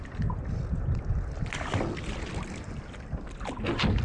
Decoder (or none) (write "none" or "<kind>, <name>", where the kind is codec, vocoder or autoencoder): none